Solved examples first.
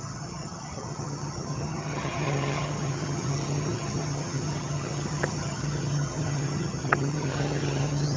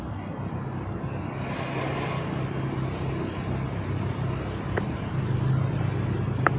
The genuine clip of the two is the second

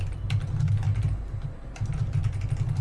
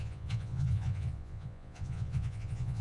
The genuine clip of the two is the first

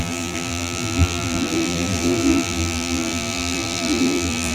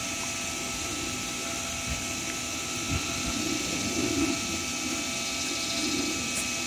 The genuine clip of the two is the second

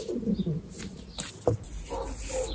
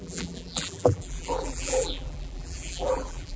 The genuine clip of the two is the first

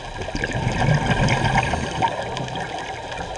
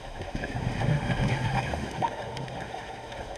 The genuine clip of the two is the first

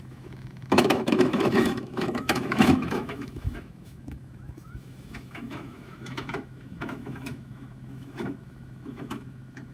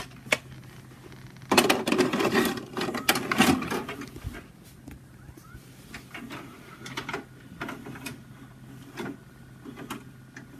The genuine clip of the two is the second